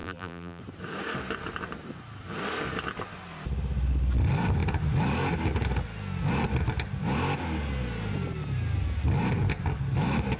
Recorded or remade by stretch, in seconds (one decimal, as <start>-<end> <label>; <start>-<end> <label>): 0.0-0.6 remade; 0.6-10.4 recorded